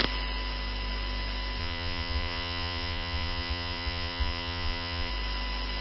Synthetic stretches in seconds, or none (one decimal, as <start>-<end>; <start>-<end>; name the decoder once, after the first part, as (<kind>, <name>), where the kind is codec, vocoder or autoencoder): 1.6-5.1 (vocoder, Vocos)

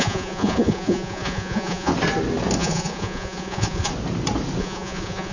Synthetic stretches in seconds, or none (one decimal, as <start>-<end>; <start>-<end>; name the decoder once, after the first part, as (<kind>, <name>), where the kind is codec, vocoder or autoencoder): 0.0-1.9 (vocoder, Vocos); 2.6-3.9; 4.6-5.3

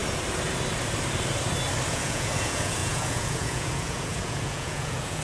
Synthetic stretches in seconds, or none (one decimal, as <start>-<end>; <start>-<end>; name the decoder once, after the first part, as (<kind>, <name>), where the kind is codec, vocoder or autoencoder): 1.9-5.2 (vocoder, Vocos)

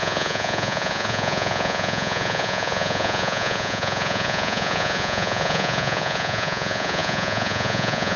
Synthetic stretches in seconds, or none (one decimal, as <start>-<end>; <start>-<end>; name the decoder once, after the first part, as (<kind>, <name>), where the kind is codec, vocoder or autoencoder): 0.0-8.2 (vocoder, Vocos)

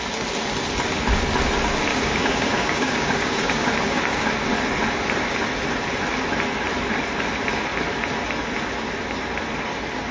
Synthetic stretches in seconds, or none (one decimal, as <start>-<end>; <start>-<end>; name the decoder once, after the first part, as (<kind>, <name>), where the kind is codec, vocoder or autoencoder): 1.9-4.3 (codec, DAC)

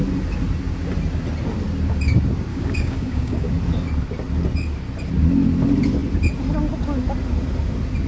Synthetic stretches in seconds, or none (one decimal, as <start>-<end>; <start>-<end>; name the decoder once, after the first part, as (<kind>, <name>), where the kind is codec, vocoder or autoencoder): 2.5-3.5 (codec, DAC)

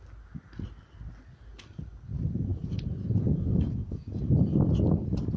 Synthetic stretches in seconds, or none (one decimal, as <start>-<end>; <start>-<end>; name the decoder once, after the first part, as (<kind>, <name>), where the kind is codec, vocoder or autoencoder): 2.5-4.2 (vocoder, Vocos)

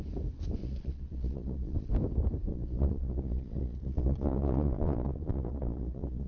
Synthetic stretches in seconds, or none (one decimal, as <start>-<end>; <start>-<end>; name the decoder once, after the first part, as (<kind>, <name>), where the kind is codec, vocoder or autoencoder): 0.6-1.9 (vocoder, Vocos); 2.5-6.3